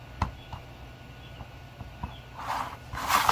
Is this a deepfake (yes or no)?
no